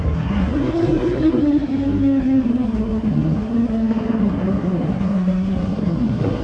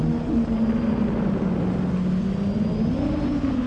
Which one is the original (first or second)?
second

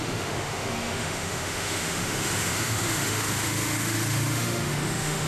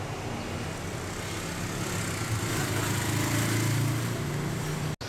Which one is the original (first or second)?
second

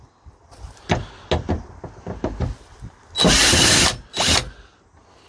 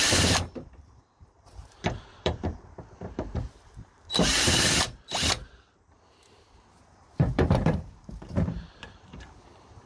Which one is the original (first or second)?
first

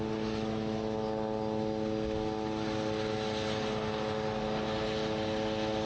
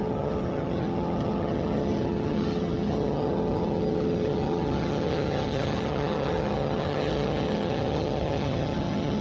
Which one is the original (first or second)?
first